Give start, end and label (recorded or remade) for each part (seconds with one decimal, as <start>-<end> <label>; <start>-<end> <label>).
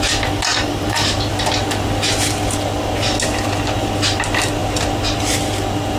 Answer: 0.0-0.5 recorded; 0.5-1.5 remade; 1.5-6.0 recorded